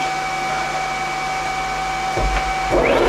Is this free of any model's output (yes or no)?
yes